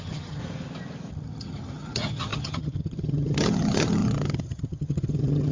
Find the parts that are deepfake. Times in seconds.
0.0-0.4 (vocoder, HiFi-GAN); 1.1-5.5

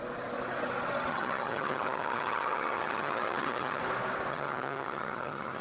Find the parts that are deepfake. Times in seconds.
1.1-3.8 (vocoder, HiFi-GAN); 4.3-5.6

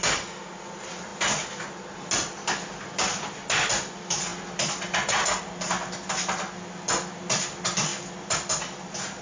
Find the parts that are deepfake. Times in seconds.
none

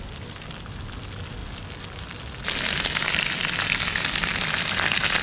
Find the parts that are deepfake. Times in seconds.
none

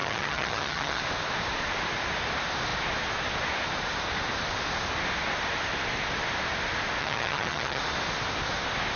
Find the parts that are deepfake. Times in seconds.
0.0-1.0 (vocoder, HiFi-GAN); 7.0-7.8

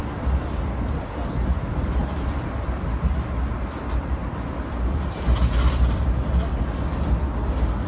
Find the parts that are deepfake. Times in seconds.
none

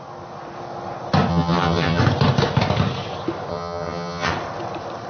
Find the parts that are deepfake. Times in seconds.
1.3-2.0 (vocoder, HiFi-GAN); 3.5-4.3